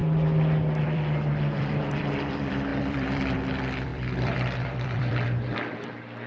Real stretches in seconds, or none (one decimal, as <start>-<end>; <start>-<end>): 0.0-0.8

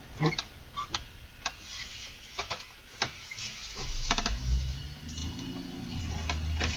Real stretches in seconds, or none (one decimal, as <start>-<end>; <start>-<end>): 0.0-1.9; 4.8-6.8

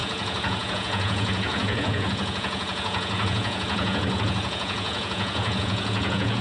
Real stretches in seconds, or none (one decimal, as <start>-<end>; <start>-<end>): none